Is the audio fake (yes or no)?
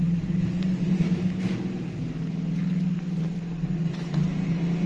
no